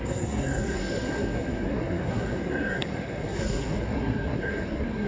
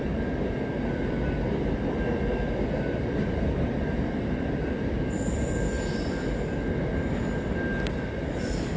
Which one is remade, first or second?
first